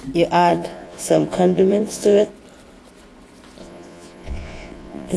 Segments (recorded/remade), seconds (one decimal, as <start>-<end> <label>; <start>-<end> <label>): 0.0-0.5 recorded; 0.5-2.3 remade; 2.3-3.6 recorded; 3.6-5.2 remade